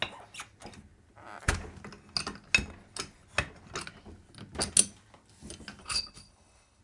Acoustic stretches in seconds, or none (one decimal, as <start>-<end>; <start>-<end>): 0.0-5.8